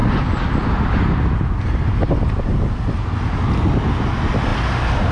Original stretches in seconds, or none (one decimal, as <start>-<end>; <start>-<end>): 0.0-5.1